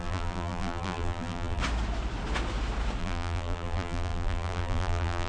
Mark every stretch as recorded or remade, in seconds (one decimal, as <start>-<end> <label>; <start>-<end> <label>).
0.0-1.6 remade; 1.6-3.0 recorded; 3.0-5.3 remade